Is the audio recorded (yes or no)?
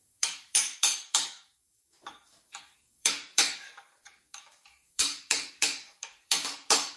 no